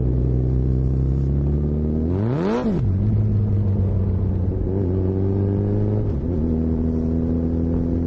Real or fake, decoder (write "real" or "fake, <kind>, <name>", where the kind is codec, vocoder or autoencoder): real